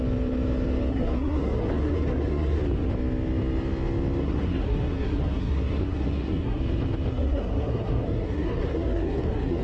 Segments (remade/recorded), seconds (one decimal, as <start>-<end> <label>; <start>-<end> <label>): 0.0-0.9 recorded; 0.9-2.6 remade; 2.6-4.2 recorded; 4.2-6.6 remade; 6.6-7.1 recorded; 7.1-9.6 remade